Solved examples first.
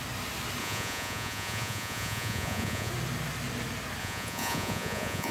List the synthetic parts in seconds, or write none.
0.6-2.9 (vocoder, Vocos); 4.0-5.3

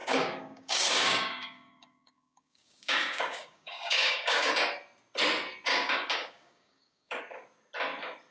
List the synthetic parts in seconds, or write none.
0.0-4.5 (codec, DAC); 5.7-7.2